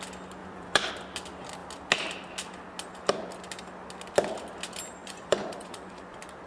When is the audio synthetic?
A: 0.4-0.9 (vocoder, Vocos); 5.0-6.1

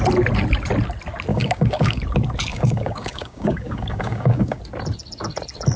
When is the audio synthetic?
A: 1.3-2.0 (codec, DAC); 2.5-4.6

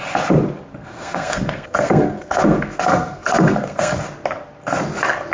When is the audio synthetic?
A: 0.8-4.0 (codec, SNAC)

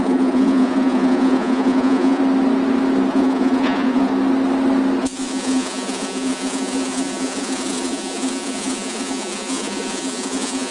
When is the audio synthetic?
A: 0.0-2.2 (vocoder, Vocos); 3.1-4.1; 5.0-10.7

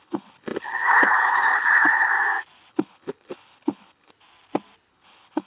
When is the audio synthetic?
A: 0.0-2.1 (codec, HILCodec); 2.7-4.1; 4.9-5.5

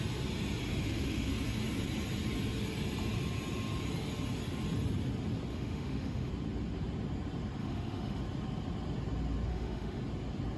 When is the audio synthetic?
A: 0.8-1.3 (autoencoder, DAC-VAE); 5.5-6.3; 7.6-8.2; 9.5-10.0